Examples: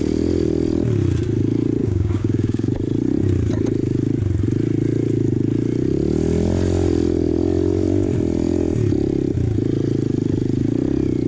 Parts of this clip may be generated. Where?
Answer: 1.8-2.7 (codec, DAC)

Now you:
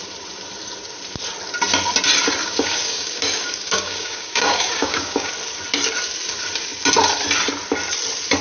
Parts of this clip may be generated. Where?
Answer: 2.4-5.3 (codec, DAC)

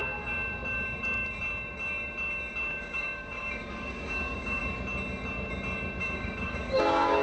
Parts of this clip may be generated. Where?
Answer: 2.8-4.6 (codec, DAC); 6.0-7.2

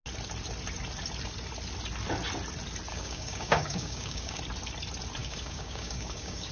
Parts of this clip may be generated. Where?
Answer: 2.9-4.4 (codec, DAC); 5.2-6.5

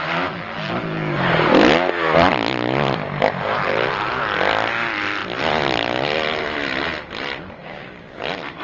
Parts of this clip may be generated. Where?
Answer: 7.6-8.2 (codec, DAC)